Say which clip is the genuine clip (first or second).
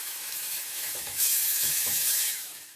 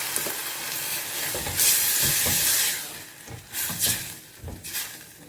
second